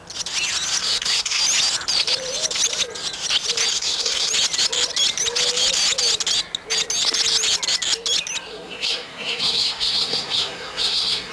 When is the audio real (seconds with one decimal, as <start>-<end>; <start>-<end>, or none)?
0.0-0.8; 1.4-3.7; 4.3-8.5